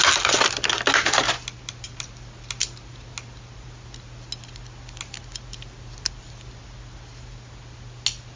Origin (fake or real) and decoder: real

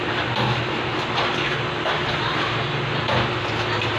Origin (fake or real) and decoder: real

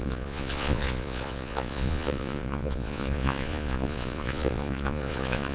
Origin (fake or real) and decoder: fake, vocoder, Vocos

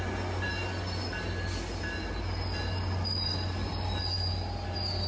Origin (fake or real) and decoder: real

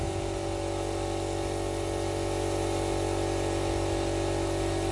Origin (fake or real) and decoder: real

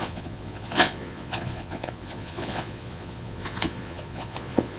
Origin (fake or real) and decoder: fake, vocoder, Vocos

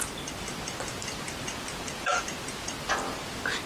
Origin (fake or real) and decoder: real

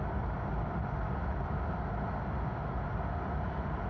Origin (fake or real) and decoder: real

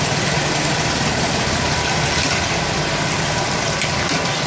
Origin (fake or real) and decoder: fake, vocoder, BigVGAN v2